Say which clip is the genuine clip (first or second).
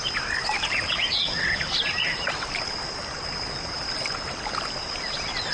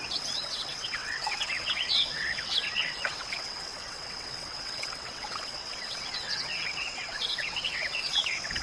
first